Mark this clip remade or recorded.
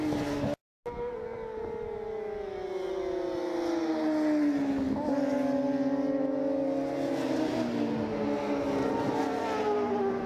recorded